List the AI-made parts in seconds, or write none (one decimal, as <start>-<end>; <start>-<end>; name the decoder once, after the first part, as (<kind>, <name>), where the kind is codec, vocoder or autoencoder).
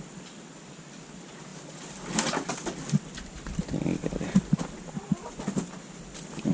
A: none